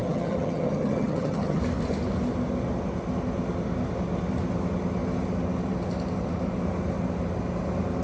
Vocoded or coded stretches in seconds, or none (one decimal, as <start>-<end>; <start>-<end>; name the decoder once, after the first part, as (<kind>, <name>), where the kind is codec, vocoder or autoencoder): 0.0-1.6 (vocoder, HiFi-GAN)